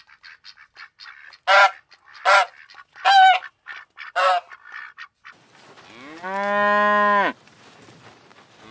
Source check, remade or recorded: recorded